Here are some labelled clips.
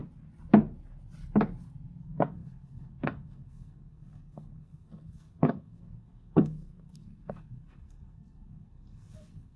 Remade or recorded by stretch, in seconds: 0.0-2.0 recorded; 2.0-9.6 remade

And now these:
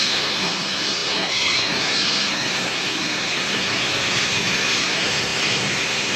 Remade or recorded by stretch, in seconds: 0.0-6.2 remade